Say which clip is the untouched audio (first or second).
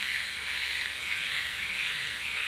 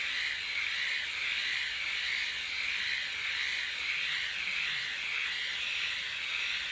second